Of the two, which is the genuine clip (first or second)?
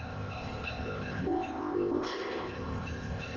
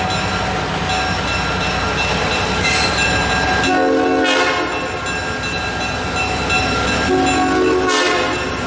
second